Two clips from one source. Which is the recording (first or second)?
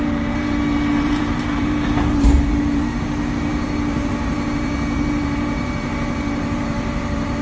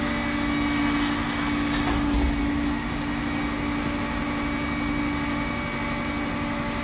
second